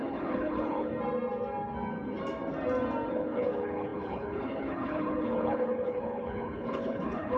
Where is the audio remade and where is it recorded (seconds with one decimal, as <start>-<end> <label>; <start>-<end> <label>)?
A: 0.0-0.9 remade; 0.9-3.1 recorded; 3.1-7.4 remade